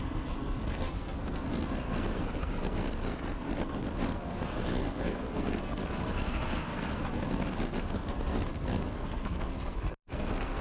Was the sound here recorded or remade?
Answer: remade